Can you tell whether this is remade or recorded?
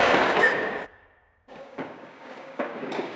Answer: remade